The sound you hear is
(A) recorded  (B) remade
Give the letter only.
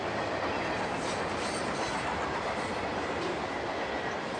A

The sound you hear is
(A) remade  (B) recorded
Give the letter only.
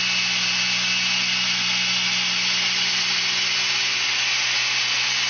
B